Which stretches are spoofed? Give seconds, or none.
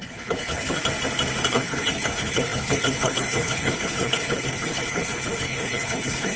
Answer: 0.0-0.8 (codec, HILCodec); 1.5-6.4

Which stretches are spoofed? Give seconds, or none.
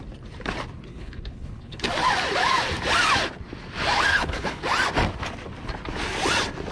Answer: 0.9-1.8 (codec, HILCodec); 4.1-4.6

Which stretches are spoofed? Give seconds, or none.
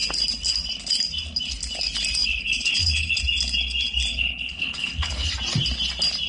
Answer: 2.2-3.2 (codec, HILCodec); 4.1-5.3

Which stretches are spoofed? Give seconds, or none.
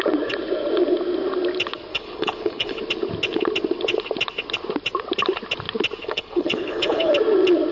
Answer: 1.9-2.8 (codec, HILCodec); 6.0-7.1